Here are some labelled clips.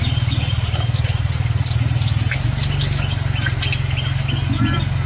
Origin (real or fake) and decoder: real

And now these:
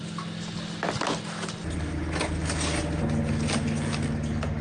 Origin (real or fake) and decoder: real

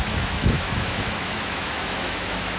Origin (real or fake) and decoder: fake, autoencoder, DAC-VAE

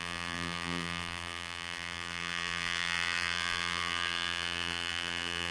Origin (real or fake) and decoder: fake, vocoder, BigVGAN v2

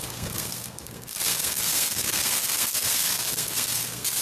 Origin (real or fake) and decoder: fake, codec, SNAC